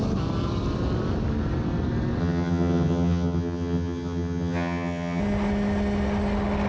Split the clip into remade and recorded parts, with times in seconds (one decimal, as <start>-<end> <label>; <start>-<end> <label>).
0.0-2.2 recorded; 2.2-5.2 remade; 5.2-6.7 recorded